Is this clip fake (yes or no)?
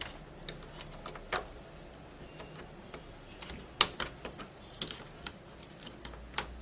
no